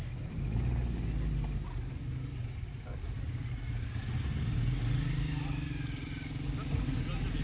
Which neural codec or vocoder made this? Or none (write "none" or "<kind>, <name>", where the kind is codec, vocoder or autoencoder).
none